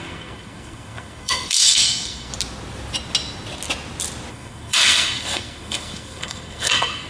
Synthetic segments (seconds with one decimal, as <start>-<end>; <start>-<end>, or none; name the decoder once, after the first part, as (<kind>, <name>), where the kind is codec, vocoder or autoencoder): 0.0-2.3 (codec, SNAC); 4.3-7.1